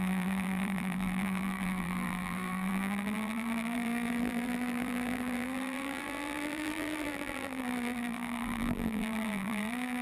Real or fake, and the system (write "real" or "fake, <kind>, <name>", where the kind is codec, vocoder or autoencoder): fake, vocoder, BigVGAN v2